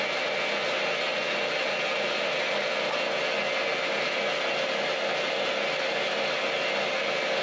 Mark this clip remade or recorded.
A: recorded